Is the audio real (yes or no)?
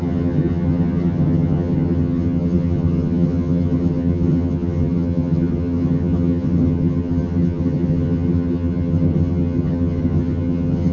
no